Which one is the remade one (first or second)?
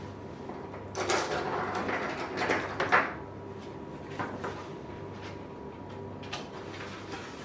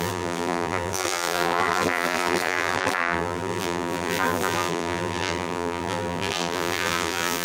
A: second